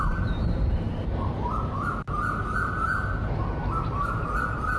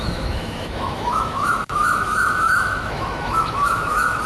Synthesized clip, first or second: second